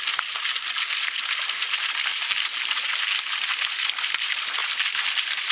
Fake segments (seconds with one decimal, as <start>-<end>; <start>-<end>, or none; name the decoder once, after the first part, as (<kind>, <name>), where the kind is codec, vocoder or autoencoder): 2.1-2.9 (vocoder, BigVGAN v2)